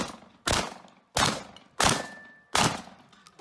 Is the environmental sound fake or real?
real